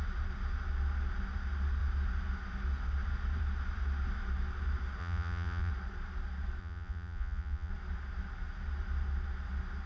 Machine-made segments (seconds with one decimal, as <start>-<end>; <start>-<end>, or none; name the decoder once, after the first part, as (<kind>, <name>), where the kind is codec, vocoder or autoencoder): 5.0-5.7 (vocoder, Vocos); 6.6-7.7